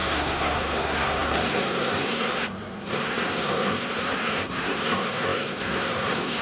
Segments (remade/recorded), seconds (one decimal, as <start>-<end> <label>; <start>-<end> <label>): 0.0-6.4 remade